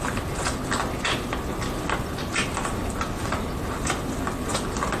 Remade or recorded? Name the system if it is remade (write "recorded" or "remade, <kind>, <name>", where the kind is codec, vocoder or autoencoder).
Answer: recorded